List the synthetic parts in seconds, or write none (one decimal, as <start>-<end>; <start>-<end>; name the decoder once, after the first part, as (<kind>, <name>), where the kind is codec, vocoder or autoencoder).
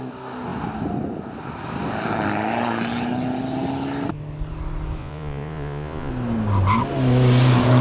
5.0-6.1 (vocoder, Vocos)